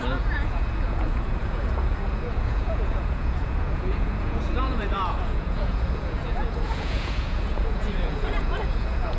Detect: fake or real fake